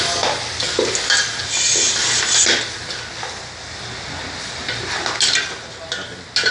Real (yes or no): yes